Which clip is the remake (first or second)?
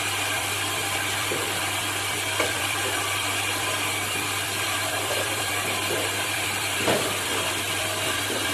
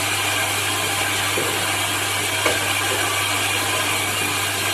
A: first